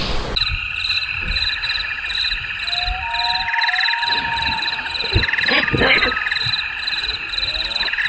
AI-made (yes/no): no